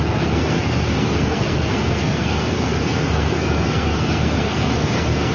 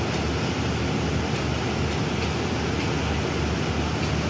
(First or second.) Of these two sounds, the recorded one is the second